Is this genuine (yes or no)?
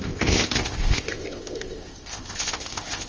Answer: no